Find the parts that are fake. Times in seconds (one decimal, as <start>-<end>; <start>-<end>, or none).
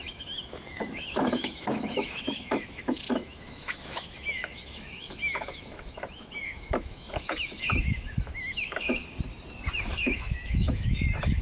0.0-9.0; 9.9-11.4